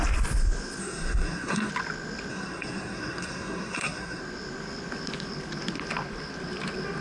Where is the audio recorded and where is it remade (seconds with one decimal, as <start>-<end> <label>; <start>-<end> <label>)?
0.0-0.8 recorded; 0.8-1.7 remade; 1.7-2.3 recorded; 2.3-4.2 remade; 4.2-7.0 recorded